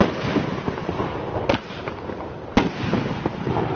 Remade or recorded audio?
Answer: recorded